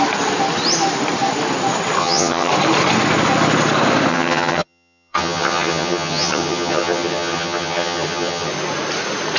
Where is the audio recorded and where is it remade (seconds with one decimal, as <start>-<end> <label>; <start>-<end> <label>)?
0.0-2.0 recorded; 2.0-2.5 remade; 2.5-4.1 recorded; 4.1-8.5 remade; 8.5-9.4 recorded